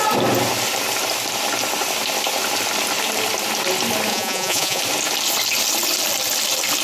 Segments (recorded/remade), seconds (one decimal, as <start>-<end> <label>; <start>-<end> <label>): 0.0-4.1 recorded; 4.1-4.8 remade; 4.8-6.8 recorded